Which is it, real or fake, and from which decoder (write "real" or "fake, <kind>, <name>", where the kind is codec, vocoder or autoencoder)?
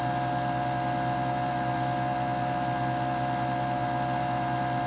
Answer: real